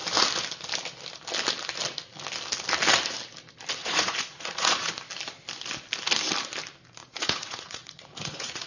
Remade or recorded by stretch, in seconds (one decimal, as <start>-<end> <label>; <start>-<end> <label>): 0.0-3.8 recorded; 3.8-4.9 remade; 4.9-7.0 recorded; 7.0-8.7 remade